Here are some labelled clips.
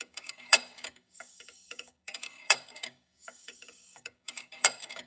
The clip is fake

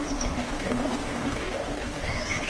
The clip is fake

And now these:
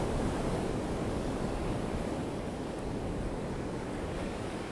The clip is fake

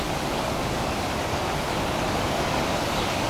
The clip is fake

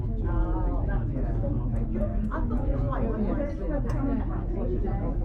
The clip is real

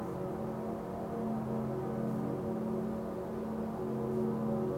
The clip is real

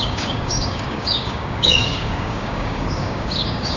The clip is fake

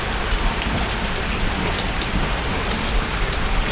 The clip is real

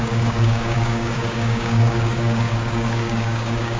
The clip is fake